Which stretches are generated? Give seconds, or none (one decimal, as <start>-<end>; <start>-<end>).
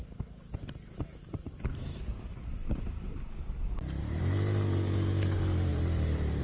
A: 1.2-2.6; 4.0-6.4